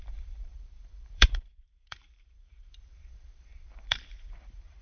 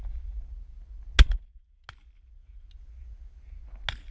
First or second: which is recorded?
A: second